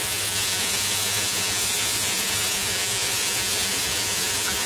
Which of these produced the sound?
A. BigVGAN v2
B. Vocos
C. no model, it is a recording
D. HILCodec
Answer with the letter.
B